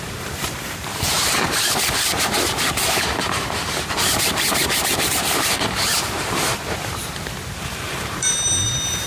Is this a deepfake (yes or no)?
yes